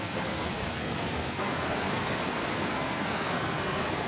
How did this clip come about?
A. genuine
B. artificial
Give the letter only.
B